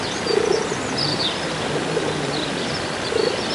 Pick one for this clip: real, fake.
real